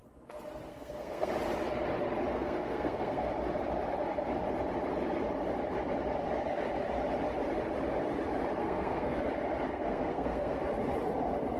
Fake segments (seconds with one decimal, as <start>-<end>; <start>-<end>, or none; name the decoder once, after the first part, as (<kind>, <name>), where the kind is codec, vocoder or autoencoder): 0.7-1.3 (codec, SNAC); 2.3-3.3; 8.6-9.2; 9.7-10.6